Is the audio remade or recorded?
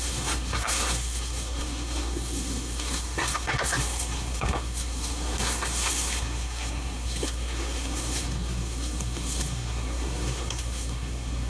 remade